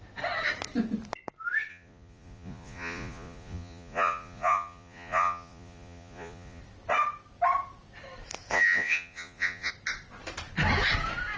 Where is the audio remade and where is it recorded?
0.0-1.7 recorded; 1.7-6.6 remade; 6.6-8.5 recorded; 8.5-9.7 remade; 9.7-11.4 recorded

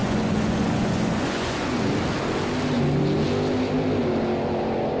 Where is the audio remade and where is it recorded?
0.0-1.9 remade; 1.9-5.0 recorded